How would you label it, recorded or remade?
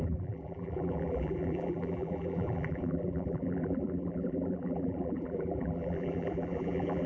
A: remade